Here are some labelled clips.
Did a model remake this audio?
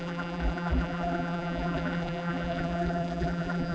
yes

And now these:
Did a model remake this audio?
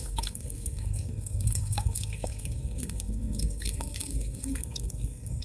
yes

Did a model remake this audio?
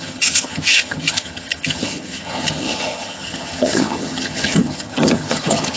yes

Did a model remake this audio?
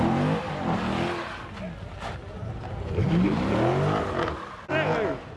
no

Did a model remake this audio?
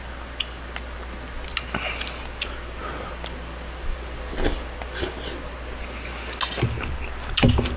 no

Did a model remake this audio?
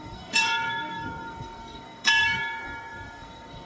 yes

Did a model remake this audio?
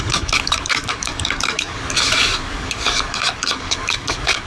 yes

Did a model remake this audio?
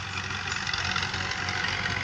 no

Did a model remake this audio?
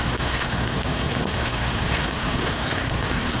yes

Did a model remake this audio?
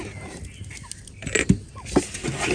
no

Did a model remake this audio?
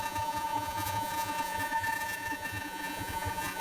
yes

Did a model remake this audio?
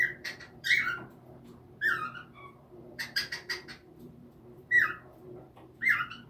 yes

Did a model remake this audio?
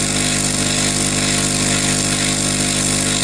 no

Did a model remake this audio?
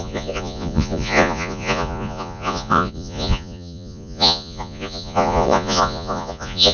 yes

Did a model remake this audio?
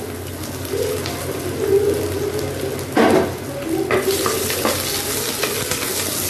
no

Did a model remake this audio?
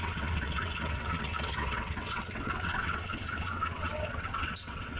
yes